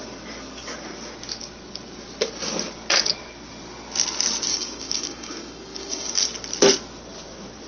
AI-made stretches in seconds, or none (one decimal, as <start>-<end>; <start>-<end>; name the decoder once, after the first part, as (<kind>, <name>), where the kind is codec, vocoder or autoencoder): 4.5-6.2 (codec, DAC)